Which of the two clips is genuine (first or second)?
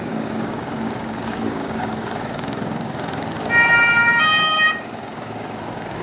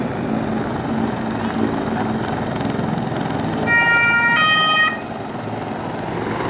second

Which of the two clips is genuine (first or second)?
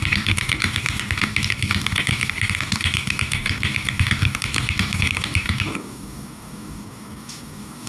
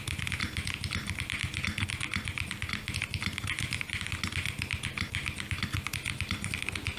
second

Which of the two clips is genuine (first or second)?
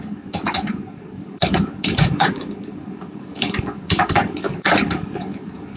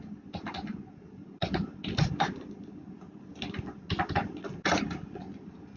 second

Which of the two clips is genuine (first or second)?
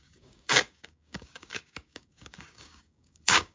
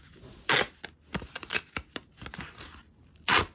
second